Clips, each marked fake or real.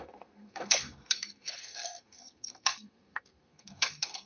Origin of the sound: fake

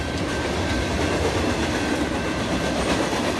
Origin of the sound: real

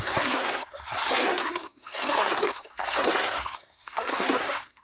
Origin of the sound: fake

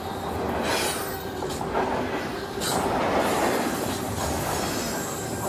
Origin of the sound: real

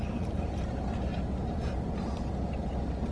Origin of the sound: real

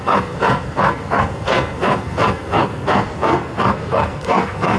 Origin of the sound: fake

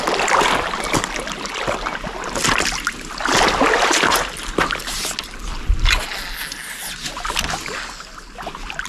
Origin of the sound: real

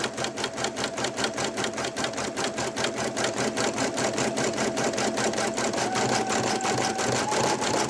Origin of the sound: real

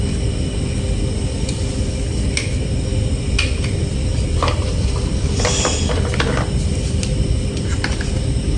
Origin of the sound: real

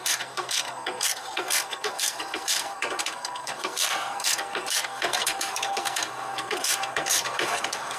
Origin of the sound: fake